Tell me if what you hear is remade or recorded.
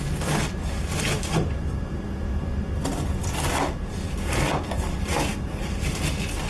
recorded